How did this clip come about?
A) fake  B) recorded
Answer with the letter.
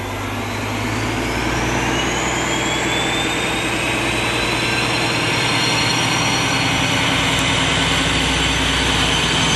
B